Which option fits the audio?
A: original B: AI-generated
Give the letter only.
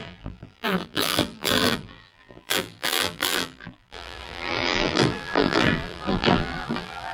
B